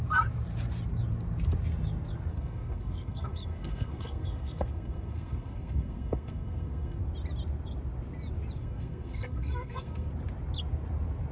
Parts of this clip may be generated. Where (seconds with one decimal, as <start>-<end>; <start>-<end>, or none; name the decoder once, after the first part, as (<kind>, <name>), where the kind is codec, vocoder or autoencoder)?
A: 2.3-7.0 (codec, SNAC); 8.6-10.1